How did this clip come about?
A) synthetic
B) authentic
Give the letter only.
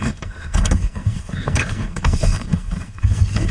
A